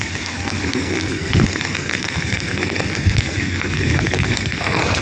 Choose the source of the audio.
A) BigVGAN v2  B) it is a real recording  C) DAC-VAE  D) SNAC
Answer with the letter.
D